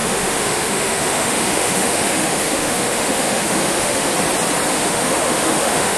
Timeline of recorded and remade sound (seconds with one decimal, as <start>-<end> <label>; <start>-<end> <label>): 0.0-4.1 remade; 4.1-4.7 recorded; 4.7-6.0 remade